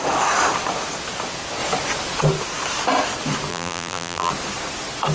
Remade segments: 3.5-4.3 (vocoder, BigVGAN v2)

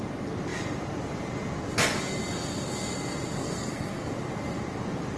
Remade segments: 3.4-4.1 (codec, SNAC)

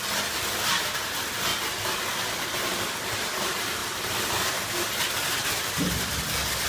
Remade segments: 3.8-4.7 (vocoder, BigVGAN v2); 5.4-6.7

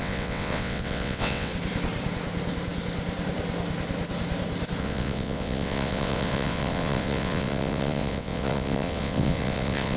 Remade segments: 0.0-1.5 (vocoder, WaveNeXt); 4.8-10.0

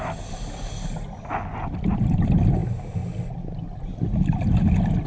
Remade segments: none

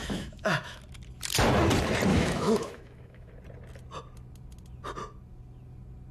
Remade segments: 0.0-0.8 (autoencoder, DAC-VAE); 2.1-3.3

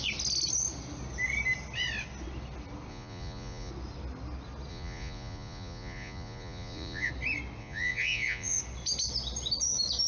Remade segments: 2.9-3.7 (vocoder, Vocos); 4.7-7.1; 7.6-8.6

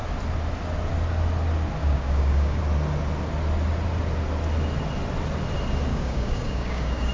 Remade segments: 1.8-2.6 (codec, DAC); 5.9-7.1